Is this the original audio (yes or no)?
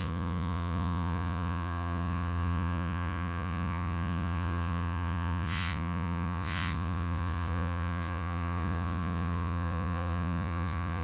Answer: no